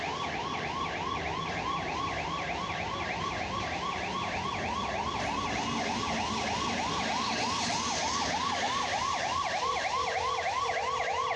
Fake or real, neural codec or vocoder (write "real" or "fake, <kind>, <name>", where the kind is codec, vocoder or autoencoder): real